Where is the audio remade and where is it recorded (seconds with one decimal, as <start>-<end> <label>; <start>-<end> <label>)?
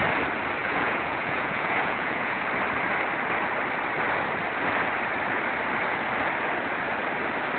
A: 0.0-0.6 recorded; 0.6-2.4 remade; 2.4-7.6 recorded